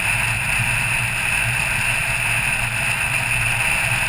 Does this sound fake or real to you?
real